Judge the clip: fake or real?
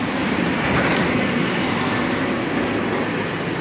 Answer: real